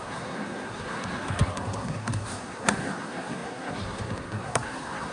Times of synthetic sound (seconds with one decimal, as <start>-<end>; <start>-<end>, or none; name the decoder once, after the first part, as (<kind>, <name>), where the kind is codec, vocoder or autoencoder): 0.0-5.1 (codec, SNAC)